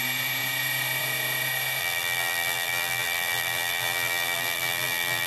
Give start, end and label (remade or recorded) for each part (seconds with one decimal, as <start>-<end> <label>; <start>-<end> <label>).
0.0-1.8 recorded; 1.8-5.3 remade